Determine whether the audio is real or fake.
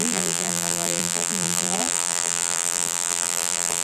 fake